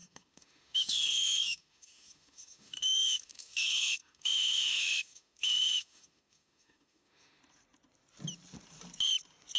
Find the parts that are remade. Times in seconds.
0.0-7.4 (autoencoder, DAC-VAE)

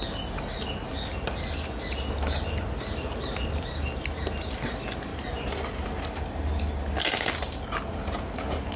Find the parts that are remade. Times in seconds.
none

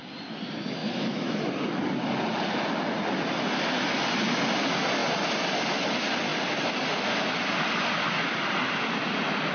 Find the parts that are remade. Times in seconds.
0.8-1.4 (autoencoder, DAC-VAE)